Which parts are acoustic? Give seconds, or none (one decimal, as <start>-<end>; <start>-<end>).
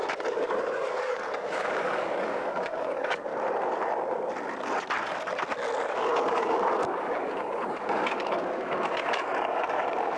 3.3-5.9